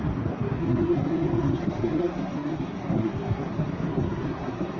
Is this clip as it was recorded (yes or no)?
no